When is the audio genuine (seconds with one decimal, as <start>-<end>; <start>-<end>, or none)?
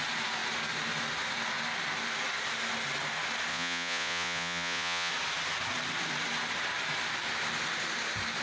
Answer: 0.0-3.5; 5.1-8.4